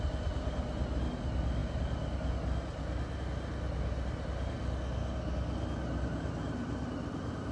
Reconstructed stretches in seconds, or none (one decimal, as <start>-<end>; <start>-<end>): none